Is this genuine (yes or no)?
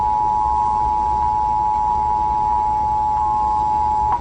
yes